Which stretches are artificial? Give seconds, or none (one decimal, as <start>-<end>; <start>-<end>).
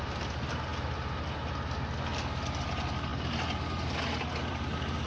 none